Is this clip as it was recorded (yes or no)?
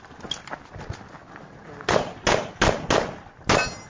yes